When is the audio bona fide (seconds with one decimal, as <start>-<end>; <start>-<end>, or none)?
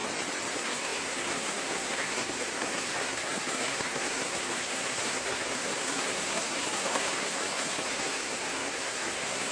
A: 0.0-0.5